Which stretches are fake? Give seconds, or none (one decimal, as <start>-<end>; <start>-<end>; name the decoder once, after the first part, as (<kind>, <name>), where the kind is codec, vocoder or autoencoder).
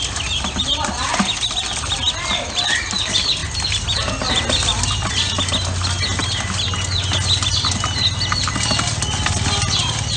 none